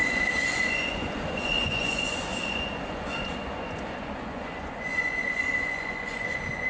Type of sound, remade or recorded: remade